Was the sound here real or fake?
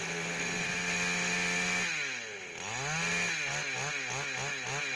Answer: real